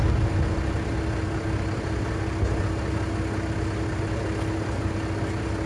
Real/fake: real